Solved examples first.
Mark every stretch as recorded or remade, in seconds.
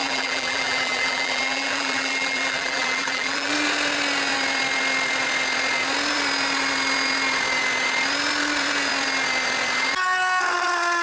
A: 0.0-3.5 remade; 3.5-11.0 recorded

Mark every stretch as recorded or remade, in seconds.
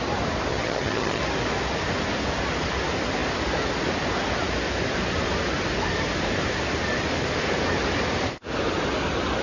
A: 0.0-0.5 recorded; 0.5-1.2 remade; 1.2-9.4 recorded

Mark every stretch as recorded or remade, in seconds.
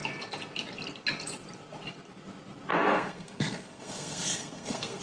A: 0.0-2.7 recorded; 2.7-5.0 remade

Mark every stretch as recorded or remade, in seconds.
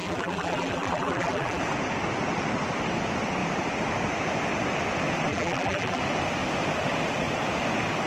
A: 0.0-1.6 remade; 1.6-5.3 recorded; 5.3-6.0 remade; 6.0-8.1 recorded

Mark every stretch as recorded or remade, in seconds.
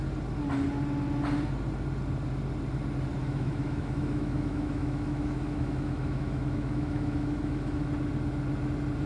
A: 0.0-3.2 recorded; 3.2-7.9 remade; 7.9-9.1 recorded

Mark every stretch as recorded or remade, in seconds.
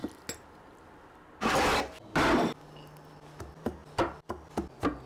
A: 0.0-5.1 recorded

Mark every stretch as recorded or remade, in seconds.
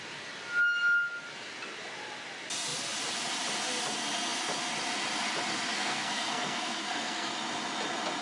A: 0.0-5.7 recorded; 5.7-7.3 remade; 7.3-8.2 recorded